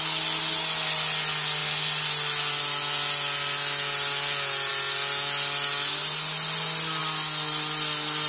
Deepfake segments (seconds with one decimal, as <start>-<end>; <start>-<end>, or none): none